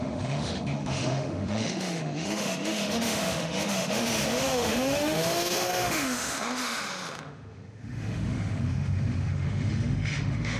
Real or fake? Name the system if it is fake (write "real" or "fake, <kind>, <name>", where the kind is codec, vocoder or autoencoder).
fake, autoencoder, DAC-VAE